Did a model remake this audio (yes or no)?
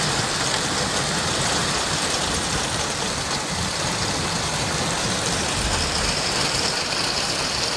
no